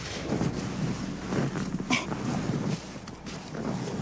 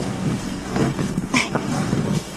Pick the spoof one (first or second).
second